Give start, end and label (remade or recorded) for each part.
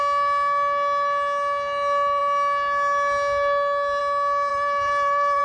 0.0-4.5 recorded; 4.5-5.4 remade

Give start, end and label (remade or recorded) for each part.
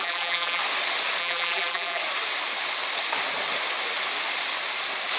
0.0-0.6 remade; 0.6-1.2 recorded; 1.2-2.0 remade; 2.0-5.2 recorded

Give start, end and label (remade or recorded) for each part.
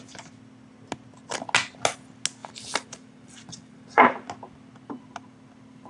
0.0-2.4 recorded; 2.4-4.3 remade; 4.3-5.9 recorded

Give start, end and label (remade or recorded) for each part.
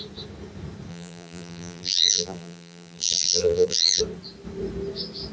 0.0-0.9 recorded; 0.9-4.0 remade; 4.0-5.3 recorded